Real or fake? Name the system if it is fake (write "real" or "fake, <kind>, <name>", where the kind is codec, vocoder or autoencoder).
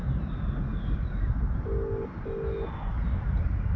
real